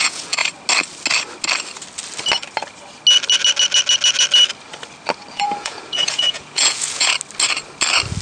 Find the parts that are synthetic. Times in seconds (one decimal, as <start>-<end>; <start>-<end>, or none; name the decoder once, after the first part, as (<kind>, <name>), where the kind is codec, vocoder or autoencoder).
0.0-0.4 (vocoder, Vocos); 5.3-7.1